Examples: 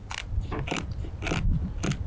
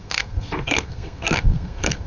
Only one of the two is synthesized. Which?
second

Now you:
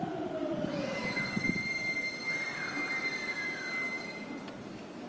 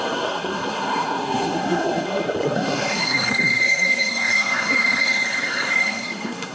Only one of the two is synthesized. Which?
second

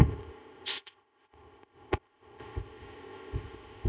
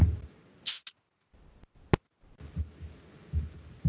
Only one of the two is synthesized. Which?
first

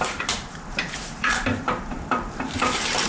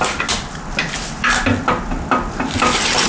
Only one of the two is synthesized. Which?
first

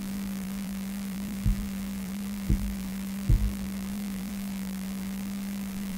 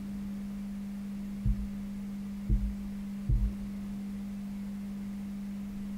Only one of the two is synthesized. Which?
first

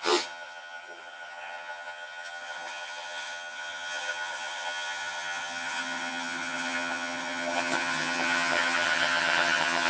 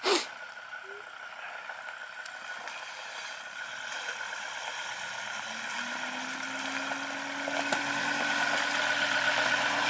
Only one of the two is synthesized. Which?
first